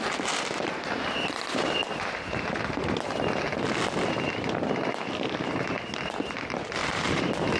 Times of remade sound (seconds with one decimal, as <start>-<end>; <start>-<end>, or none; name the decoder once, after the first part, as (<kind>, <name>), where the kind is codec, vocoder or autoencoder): 0.0-1.8 (vocoder, BigVGAN v2); 4.3-7.6